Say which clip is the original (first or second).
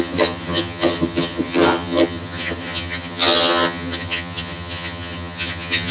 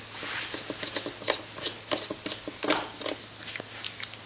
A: second